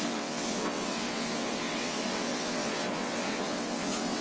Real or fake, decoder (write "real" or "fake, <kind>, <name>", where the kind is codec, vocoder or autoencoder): fake, vocoder, WaveNeXt